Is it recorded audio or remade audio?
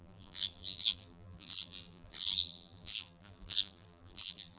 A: remade